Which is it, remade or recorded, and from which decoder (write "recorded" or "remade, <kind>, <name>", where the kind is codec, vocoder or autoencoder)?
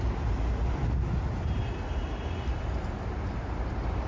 recorded